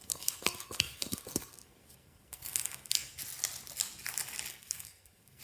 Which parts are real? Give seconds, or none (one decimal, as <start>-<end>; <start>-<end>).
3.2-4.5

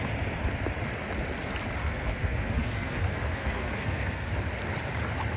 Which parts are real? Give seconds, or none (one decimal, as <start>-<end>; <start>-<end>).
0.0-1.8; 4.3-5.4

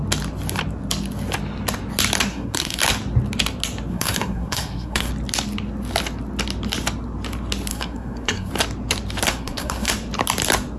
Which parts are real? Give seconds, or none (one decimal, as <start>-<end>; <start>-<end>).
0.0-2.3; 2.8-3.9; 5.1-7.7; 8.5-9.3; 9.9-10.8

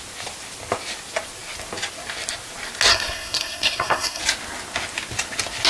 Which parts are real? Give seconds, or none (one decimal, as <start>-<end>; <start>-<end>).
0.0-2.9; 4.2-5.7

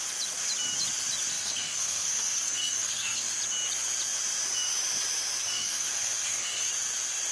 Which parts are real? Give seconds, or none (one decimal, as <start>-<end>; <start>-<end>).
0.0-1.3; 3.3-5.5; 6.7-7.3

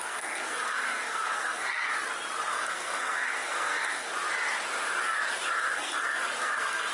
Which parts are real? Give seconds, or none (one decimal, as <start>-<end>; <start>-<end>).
1.9-2.5; 4.1-5.6

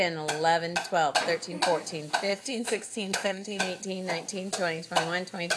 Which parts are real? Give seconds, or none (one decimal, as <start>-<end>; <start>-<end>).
0.0-2.3; 3.6-5.6

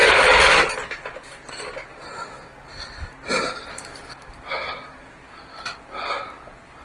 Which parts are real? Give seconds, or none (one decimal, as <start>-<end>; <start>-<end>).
0.0-6.8